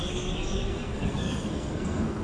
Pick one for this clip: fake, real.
fake